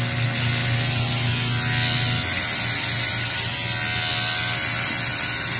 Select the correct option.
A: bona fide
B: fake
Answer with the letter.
A